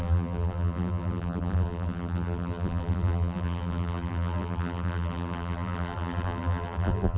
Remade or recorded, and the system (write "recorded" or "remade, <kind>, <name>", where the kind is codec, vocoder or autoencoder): remade, vocoder, BigVGAN v2